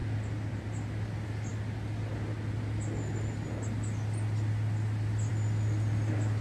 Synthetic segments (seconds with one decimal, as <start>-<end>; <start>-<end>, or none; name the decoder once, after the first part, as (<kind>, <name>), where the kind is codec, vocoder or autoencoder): none